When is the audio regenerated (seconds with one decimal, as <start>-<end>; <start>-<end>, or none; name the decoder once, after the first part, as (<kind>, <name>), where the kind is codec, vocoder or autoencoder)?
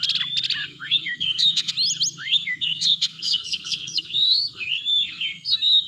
0.6-1.7 (codec, SNAC); 2.2-5.9